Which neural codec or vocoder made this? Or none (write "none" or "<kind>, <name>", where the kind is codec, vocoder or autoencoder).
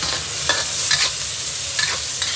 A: none